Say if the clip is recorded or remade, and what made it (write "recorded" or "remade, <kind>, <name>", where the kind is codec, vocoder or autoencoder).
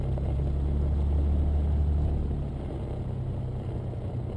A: recorded